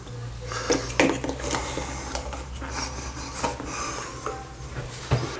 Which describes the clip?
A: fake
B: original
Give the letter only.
B